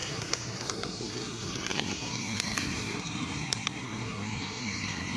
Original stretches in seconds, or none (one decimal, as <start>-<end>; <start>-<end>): none